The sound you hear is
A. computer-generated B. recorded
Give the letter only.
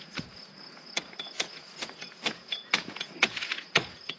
A